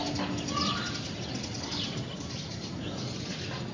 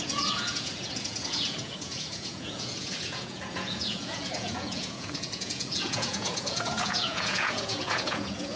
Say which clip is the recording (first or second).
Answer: first